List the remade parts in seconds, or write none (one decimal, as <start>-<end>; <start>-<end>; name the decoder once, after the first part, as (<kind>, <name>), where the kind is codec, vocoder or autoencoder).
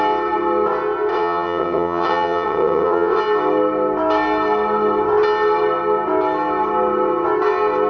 1.1-3.2 (vocoder, WaveNeXt)